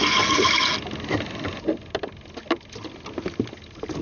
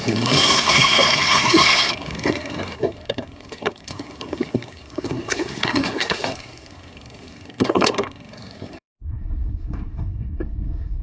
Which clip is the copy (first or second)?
second